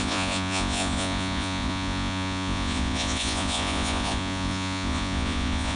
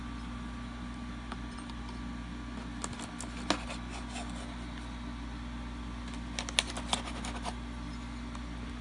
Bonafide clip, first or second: second